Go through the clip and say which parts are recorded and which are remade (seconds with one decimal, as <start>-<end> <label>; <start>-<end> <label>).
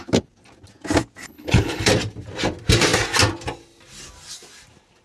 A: 0.0-1.2 recorded; 1.2-1.9 remade; 1.9-5.0 recorded